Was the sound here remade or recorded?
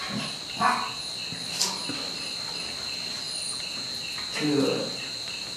recorded